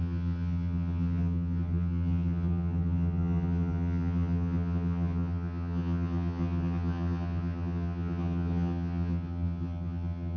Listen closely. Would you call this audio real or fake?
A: fake